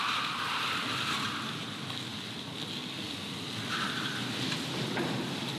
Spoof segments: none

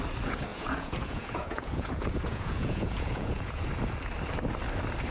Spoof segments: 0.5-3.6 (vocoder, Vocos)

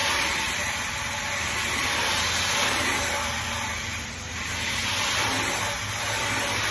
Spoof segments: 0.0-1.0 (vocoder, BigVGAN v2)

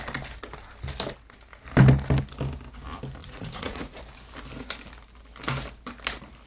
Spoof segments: 3.2-4.0 (vocoder, Vocos)